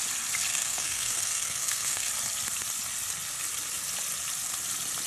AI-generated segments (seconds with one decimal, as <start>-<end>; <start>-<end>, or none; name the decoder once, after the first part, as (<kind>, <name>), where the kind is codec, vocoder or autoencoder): 0.5-2.1 (codec, SNAC)